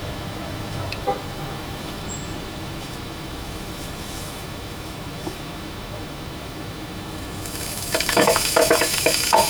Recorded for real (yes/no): no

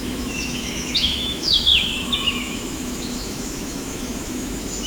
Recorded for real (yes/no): no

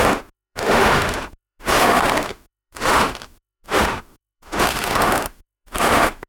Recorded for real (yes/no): no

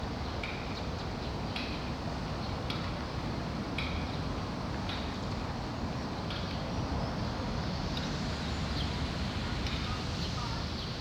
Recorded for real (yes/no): yes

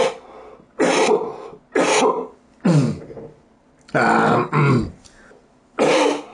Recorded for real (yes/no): yes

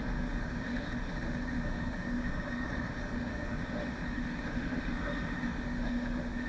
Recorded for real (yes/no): no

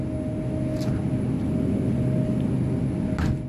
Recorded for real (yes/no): yes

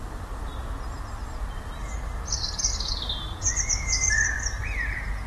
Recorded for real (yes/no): yes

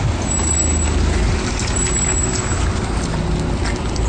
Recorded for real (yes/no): yes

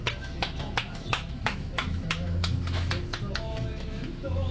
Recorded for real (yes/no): no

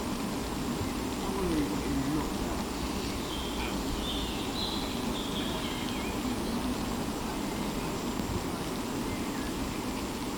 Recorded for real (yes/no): yes